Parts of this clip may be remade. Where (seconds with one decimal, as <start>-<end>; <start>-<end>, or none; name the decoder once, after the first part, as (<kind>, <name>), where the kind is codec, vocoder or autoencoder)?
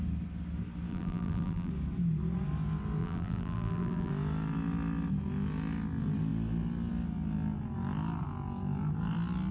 0.9-1.7 (vocoder, BigVGAN v2); 3.0-4.1